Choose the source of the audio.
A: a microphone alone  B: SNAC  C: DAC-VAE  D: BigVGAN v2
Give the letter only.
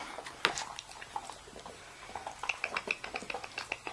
A